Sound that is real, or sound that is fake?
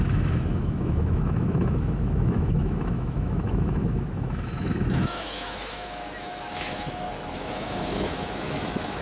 fake